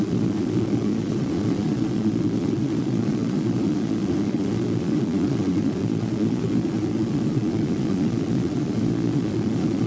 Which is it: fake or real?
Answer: fake